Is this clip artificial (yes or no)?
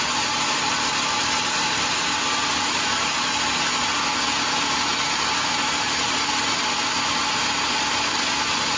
no